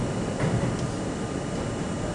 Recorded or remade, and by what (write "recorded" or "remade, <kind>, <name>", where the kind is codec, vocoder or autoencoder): recorded